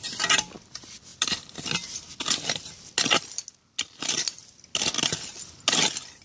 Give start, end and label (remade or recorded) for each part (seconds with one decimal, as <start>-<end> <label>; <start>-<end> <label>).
0.0-6.2 recorded